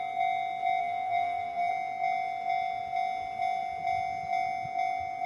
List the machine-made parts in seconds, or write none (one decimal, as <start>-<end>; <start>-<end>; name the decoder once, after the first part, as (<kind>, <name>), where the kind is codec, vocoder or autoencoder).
0.8-1.7 (vocoder, BigVGAN v2)